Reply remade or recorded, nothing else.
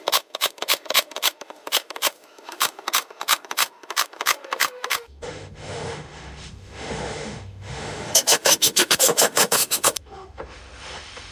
remade